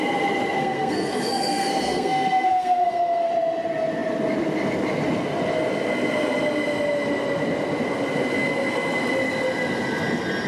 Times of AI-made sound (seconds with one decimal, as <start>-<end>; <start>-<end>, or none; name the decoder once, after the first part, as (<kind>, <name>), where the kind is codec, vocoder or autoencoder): 0.6-3.3 (codec, SNAC)